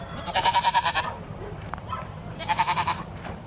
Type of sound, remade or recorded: remade